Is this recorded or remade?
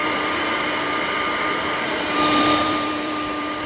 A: remade